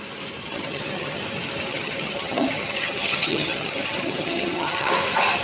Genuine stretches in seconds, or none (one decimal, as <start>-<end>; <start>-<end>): 0.0-0.4; 1.2-1.7; 4.9-5.4